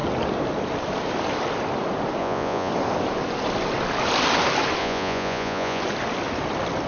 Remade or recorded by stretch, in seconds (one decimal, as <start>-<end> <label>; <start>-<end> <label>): 0.0-2.2 recorded; 2.2-2.7 remade; 2.7-4.8 recorded; 4.8-5.8 remade; 5.8-6.9 recorded